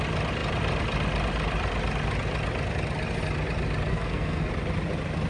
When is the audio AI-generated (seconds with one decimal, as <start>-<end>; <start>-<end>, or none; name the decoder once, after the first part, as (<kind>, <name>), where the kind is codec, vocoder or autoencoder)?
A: 3.9-4.5 (codec, SNAC)

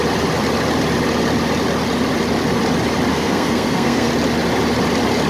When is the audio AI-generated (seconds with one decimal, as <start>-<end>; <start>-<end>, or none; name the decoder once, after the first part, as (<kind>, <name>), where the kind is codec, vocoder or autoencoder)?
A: 3.1-4.1 (codec, SNAC)

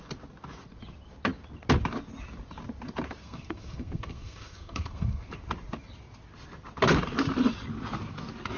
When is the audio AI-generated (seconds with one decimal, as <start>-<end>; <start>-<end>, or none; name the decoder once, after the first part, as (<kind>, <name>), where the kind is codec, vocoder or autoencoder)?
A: 3.2-5.3 (codec, SNAC)

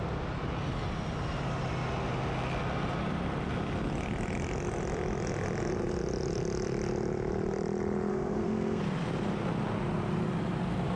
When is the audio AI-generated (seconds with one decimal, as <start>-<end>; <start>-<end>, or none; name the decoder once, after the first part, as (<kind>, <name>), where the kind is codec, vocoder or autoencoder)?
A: 8.1-8.8 (codec, SNAC)

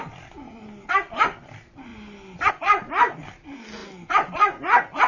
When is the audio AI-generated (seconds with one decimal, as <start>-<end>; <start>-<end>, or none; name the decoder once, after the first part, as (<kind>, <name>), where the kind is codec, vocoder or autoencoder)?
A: none

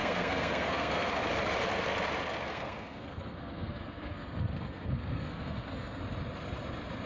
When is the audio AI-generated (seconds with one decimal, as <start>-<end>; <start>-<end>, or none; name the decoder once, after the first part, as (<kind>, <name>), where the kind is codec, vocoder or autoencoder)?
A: 0.0-1.1 (codec, SNAC); 2.5-6.0

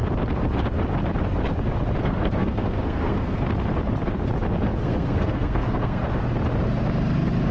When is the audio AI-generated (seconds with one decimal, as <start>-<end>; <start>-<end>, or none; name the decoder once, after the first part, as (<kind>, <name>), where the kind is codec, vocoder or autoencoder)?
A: 2.0-3.4 (codec, SNAC); 4.8-6.0